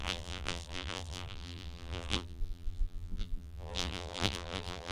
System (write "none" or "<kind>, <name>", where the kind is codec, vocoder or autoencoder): vocoder, BigVGAN v2